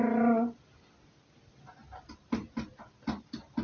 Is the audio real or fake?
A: real